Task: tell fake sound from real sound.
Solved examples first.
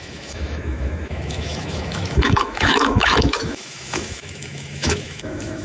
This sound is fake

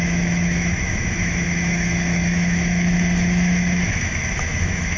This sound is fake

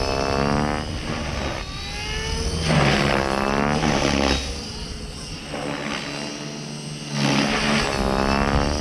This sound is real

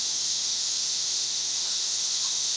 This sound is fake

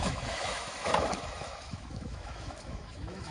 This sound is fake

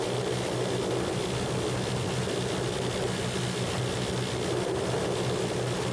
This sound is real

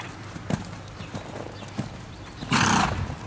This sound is real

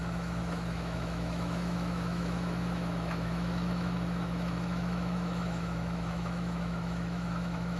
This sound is fake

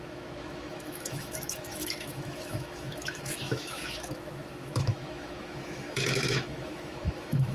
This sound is fake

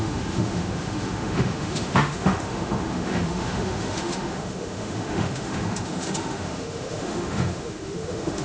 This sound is fake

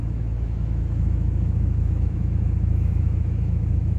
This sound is fake